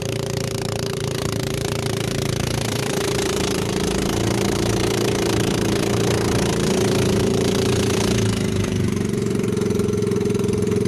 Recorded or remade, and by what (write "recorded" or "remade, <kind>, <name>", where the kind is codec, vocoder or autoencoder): remade, vocoder, BigVGAN v2